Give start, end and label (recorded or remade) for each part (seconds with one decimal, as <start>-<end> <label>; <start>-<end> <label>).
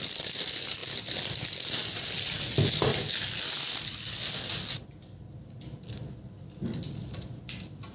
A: 0.0-7.9 recorded